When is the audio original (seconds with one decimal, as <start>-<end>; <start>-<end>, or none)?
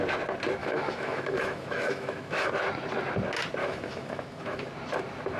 0.0-0.6; 2.5-3.6; 4.7-5.4